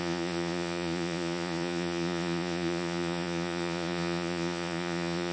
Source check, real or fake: fake